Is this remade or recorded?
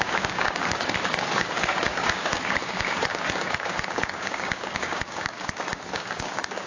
remade